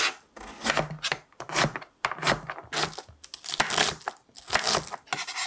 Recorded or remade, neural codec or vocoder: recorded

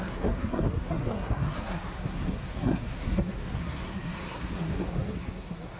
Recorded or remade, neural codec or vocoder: remade, codec, SNAC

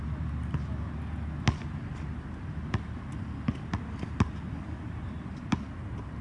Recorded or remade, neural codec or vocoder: recorded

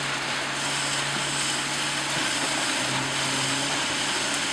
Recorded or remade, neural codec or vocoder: recorded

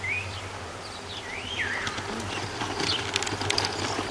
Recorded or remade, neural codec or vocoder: recorded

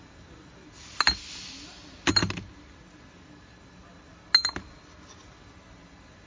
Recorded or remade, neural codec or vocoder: recorded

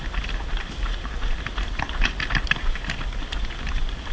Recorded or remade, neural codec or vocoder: recorded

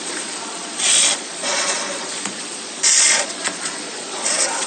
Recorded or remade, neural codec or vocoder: remade, vocoder, Vocos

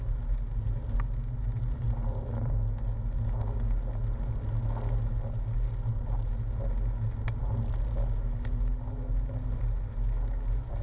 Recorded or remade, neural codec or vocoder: recorded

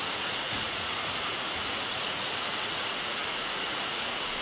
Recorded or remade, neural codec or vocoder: remade, vocoder, Vocos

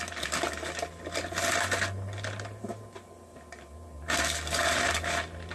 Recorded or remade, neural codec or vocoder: recorded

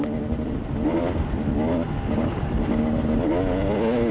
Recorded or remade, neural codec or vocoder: recorded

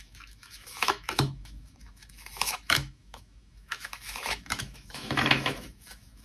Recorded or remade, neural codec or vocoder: remade, autoencoder, DAC-VAE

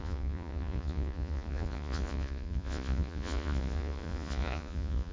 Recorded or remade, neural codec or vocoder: remade, vocoder, Vocos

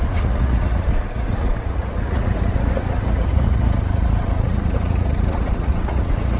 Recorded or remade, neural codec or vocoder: remade, vocoder, Vocos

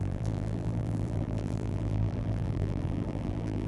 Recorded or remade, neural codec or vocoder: remade, vocoder, BigVGAN v2